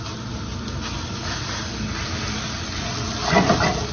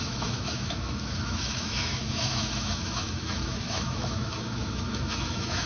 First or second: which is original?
first